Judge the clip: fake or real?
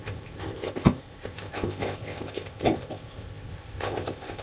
fake